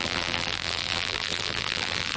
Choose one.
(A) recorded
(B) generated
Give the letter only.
B